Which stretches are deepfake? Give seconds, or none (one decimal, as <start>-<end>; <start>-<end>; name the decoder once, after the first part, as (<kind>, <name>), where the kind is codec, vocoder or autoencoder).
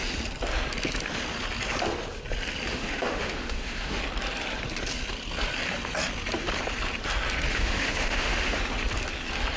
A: 2.7-4.0 (autoencoder, DAC-VAE); 7.5-8.6